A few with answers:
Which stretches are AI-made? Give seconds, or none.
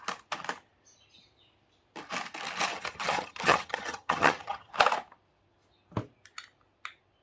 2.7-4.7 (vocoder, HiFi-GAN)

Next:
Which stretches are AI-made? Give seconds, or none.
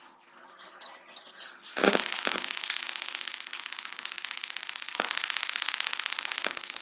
0.4-1.5 (vocoder, HiFi-GAN)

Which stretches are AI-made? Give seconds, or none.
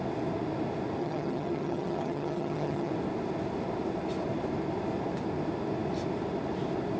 1.0-2.9 (vocoder, HiFi-GAN)